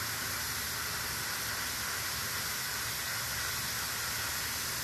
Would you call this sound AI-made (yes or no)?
no